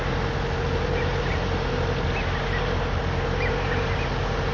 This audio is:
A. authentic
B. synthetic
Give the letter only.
A